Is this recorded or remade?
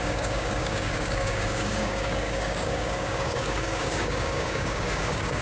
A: remade